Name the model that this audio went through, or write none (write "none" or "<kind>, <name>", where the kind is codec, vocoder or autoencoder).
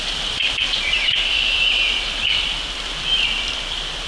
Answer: none